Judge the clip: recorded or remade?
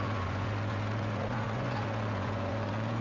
remade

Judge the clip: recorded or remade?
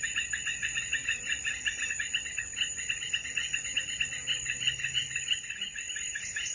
recorded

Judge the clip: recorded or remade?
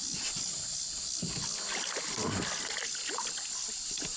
recorded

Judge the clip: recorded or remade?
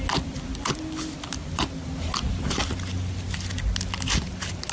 recorded